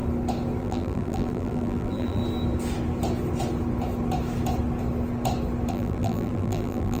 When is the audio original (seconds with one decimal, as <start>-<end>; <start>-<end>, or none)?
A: 0.0-0.6; 2.2-5.7